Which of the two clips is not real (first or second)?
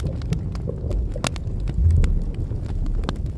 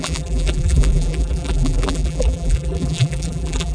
second